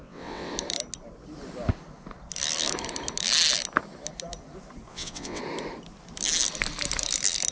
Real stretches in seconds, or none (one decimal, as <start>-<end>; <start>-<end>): 0.5-4.9; 5.4-7.5